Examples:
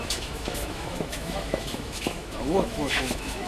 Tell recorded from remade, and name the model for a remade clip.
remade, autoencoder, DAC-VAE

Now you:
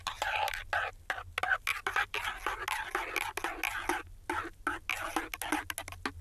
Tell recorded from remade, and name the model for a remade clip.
recorded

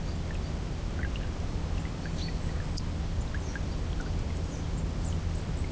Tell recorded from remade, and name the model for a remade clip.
recorded